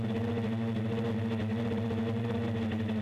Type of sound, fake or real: real